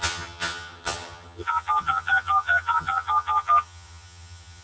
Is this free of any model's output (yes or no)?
no